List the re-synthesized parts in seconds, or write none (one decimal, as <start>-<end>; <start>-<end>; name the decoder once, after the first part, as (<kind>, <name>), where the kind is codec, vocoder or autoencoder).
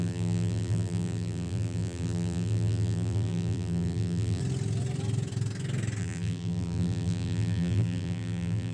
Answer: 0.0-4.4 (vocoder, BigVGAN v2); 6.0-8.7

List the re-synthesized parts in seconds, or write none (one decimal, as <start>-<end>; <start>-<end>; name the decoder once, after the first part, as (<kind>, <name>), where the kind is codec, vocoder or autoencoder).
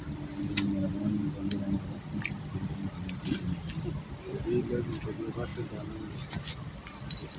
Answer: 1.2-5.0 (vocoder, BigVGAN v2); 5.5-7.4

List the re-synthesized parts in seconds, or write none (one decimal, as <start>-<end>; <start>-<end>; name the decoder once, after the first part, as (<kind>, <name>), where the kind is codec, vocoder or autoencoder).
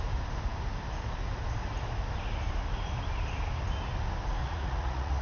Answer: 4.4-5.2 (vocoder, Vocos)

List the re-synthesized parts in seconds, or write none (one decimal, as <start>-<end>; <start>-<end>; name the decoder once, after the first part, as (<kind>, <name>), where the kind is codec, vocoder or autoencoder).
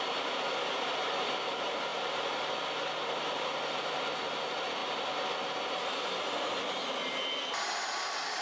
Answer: none